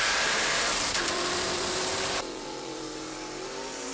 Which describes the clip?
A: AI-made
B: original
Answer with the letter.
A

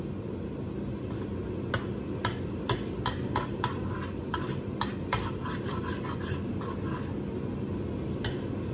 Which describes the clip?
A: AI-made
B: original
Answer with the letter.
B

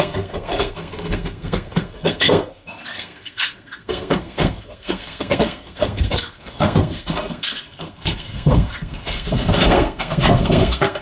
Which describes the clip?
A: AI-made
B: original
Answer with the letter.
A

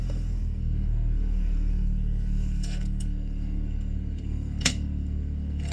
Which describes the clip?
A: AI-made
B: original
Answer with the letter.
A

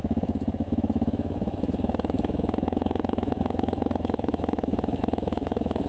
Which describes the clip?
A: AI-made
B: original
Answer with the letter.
A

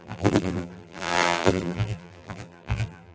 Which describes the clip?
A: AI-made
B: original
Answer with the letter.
A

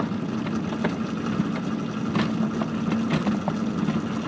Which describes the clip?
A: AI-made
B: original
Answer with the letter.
B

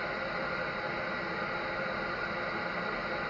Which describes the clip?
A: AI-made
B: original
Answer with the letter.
B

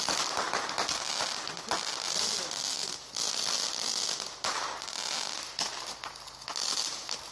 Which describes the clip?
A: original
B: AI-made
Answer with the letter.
A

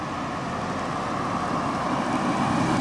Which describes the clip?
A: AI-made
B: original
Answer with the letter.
B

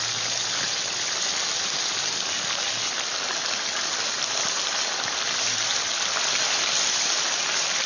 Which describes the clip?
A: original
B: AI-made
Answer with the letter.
A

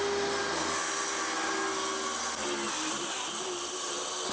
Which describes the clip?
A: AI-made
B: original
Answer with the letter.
B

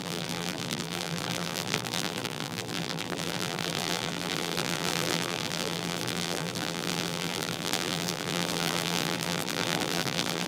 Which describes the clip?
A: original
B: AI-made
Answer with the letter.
B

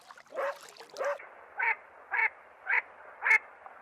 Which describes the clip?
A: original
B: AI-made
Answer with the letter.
A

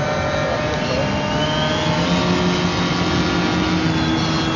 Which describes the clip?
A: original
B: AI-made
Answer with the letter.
A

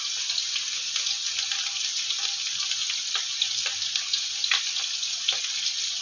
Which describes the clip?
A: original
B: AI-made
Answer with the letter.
A